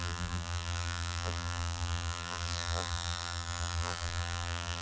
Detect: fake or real fake